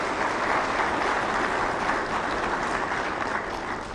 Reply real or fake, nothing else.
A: real